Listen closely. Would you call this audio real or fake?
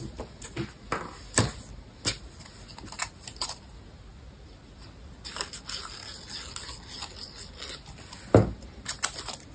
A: real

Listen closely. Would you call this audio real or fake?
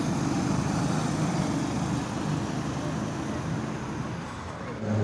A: real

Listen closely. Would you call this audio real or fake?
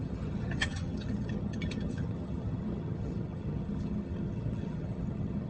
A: fake